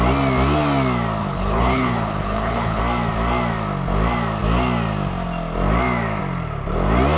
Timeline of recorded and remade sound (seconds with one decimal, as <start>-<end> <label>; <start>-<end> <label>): 0.0-1.2 recorded; 1.2-2.8 remade; 2.8-7.2 recorded